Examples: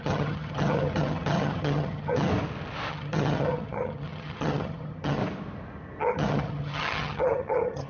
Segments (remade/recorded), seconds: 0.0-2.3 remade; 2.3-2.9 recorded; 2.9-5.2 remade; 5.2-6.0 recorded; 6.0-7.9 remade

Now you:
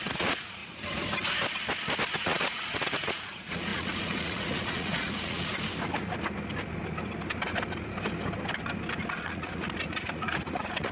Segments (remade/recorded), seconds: 0.0-0.6 remade; 0.6-2.2 recorded; 2.2-5.5 remade; 5.5-9.2 recorded; 9.2-10.9 remade